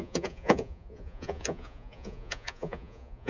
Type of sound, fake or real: fake